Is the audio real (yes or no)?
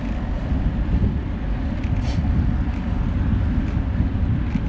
yes